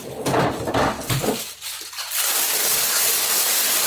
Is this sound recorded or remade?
remade